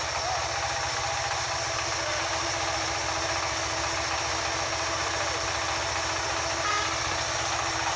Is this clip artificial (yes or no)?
no